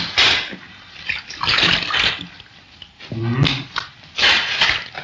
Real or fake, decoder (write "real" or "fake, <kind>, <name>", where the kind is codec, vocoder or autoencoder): real